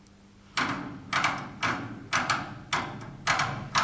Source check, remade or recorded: recorded